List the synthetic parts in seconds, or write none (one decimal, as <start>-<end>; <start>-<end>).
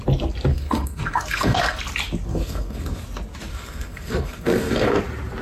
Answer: 0.5-1.8; 2.3-3.0; 3.5-5.0